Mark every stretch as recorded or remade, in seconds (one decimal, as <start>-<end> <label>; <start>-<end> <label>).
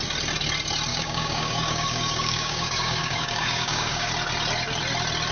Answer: 0.0-0.9 recorded; 0.9-4.1 remade; 4.1-5.3 recorded